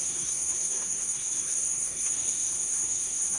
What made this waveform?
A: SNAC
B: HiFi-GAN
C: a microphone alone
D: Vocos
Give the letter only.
A